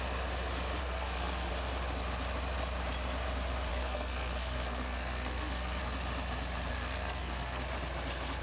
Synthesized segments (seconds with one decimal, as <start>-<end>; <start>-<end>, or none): 0.8-1.5; 3.7-5.8; 6.7-7.6